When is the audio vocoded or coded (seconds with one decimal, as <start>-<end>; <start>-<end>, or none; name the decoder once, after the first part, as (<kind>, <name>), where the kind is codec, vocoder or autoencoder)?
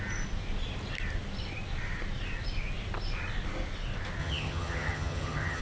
4.2-5.6 (vocoder, HiFi-GAN)